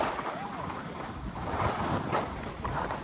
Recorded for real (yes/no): yes